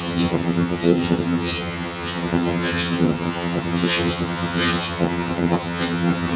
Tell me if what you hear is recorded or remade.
remade